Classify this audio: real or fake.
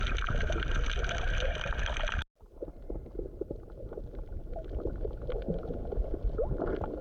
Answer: real